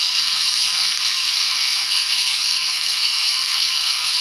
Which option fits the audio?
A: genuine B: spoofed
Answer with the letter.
B